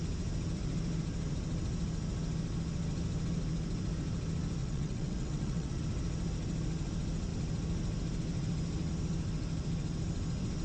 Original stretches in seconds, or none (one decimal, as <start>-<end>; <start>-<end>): 0.0-4.6; 5.8-10.6